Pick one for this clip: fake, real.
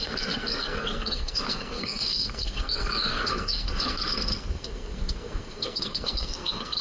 fake